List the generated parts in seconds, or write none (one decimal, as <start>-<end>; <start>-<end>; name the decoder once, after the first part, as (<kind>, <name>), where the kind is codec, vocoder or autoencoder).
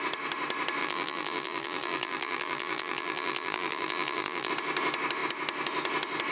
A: 0.8-4.5 (vocoder, BigVGAN v2)